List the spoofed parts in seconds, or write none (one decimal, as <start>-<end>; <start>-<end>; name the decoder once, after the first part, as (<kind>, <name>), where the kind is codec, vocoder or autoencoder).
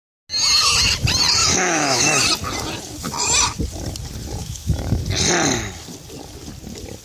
1.4-2.0 (autoencoder, DAC-VAE); 4.4-5.0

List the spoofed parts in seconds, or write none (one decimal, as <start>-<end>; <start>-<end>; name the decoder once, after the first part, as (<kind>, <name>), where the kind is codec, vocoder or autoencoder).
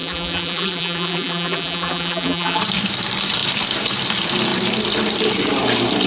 0.0-2.6 (vocoder, BigVGAN v2)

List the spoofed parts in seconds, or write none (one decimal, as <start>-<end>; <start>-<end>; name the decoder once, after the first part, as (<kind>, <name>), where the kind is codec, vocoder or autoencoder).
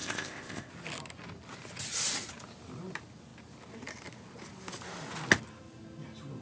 0.0-0.7 (codec, ZipCodec)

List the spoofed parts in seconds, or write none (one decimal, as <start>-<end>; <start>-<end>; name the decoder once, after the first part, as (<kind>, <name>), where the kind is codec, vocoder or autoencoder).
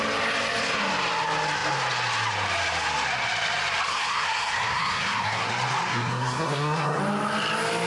3.9-5.5 (codec, SNAC); 5.9-7.0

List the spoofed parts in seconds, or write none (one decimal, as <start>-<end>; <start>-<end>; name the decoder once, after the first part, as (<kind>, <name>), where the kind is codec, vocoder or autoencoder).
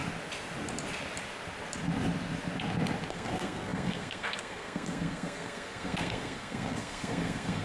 3.1-7.6 (codec, SNAC)